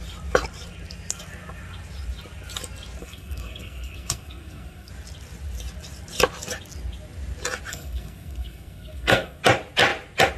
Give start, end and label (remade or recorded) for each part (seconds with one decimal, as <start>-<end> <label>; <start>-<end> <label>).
0.0-3.0 recorded; 3.0-4.9 remade; 4.9-7.7 recorded; 7.7-9.4 remade; 9.4-10.4 recorded